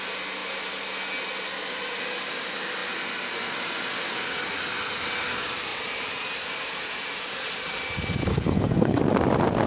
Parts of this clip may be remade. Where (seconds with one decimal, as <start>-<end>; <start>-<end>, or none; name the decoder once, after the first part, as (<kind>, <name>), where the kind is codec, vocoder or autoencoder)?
8.3-9.0 (codec, HILCodec)